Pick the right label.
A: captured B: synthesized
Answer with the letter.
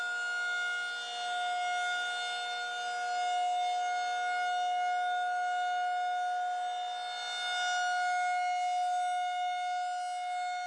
A